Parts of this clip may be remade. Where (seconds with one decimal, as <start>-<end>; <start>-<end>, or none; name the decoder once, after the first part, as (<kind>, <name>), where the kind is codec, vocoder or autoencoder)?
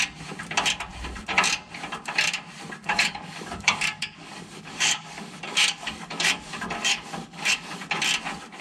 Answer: 2.9-8.0 (codec, DAC)